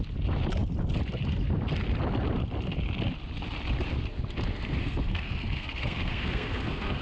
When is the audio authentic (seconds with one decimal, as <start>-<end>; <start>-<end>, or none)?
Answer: 0.0-4.8